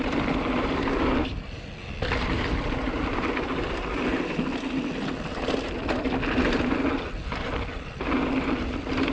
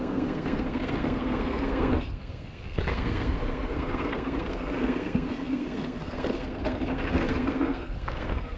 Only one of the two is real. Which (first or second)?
first